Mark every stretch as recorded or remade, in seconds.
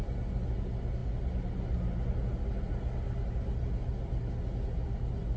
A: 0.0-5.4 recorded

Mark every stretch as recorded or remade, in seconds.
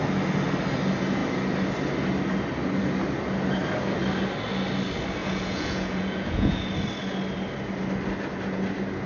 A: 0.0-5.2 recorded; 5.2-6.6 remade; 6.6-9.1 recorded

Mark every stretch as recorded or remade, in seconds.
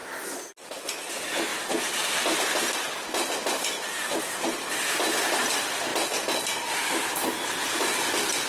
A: 0.0-8.5 recorded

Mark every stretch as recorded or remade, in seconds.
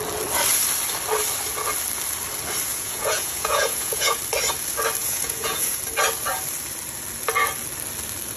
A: 0.0-2.7 recorded; 2.7-4.2 remade; 4.2-5.0 recorded; 5.0-5.8 remade; 5.8-8.4 recorded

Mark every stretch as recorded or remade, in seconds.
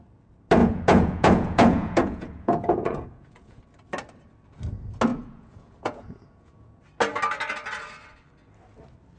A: 0.0-0.6 recorded; 0.6-3.6 remade; 3.6-5.1 recorded; 5.1-6.8 remade; 6.8-9.2 recorded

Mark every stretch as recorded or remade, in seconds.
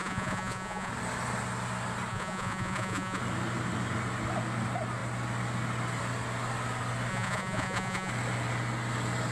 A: 0.0-0.9 remade; 0.9-2.1 recorded; 2.1-3.2 remade; 3.2-7.1 recorded; 7.1-8.1 remade; 8.1-9.3 recorded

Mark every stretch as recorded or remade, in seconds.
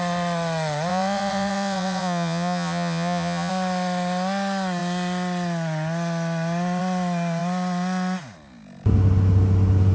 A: 0.0-0.9 recorded; 0.9-3.5 remade; 3.5-9.9 recorded